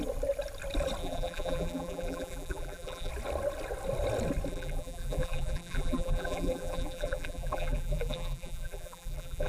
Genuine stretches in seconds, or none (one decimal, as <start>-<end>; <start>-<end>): 0.0-1.0; 3.1-4.5